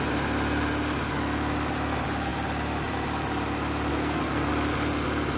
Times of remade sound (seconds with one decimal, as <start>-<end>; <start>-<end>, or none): 3.9-4.5